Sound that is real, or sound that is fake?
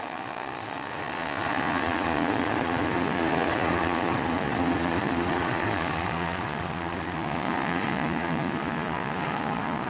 fake